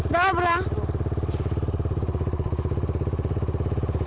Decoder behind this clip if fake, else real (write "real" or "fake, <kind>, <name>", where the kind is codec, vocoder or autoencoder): real